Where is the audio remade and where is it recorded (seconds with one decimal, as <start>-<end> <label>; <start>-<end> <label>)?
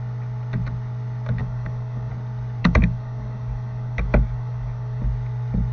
0.0-1.4 recorded; 1.4-2.1 remade; 2.1-2.6 recorded; 2.6-5.0 remade; 5.0-5.7 recorded